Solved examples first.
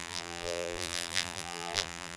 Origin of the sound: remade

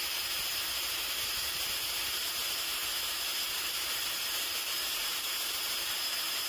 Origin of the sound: remade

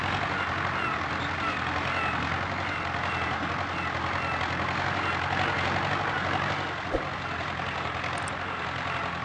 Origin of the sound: recorded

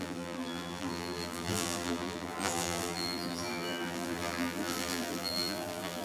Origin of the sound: remade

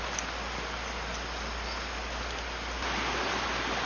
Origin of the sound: recorded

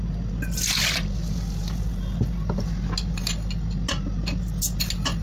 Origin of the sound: recorded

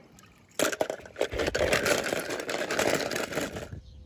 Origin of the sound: recorded